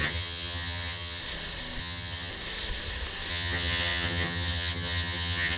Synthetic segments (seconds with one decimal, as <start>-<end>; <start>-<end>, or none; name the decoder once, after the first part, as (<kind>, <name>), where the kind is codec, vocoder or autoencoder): 0.0-1.2 (vocoder, HiFi-GAN); 1.8-2.3; 3.3-5.6